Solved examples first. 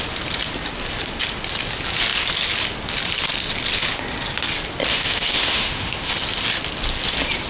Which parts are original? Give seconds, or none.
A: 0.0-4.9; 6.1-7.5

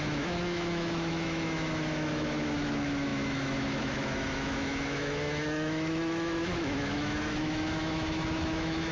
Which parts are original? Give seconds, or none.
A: none

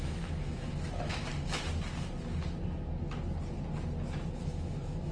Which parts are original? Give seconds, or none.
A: 1.3-4.4

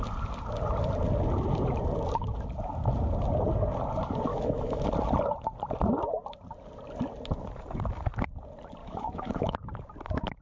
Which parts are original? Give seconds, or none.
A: 0.0-4.3; 4.8-8.8; 9.7-10.4

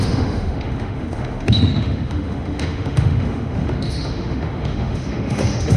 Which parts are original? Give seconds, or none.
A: none

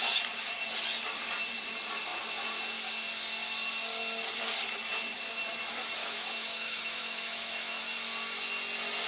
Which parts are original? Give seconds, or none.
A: 0.0-6.0; 7.8-9.1

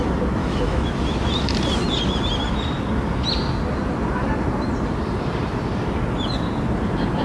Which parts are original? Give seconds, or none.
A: 0.0-0.4; 0.9-7.2